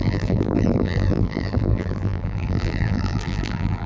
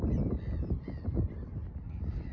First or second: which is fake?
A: first